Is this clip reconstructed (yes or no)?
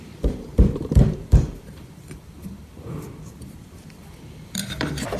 yes